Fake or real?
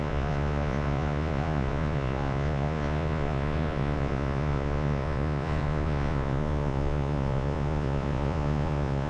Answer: fake